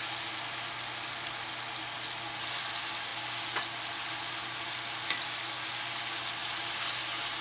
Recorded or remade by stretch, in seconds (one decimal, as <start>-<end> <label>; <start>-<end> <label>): 0.0-7.4 recorded